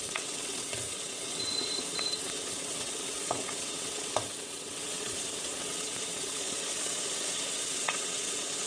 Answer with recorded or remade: remade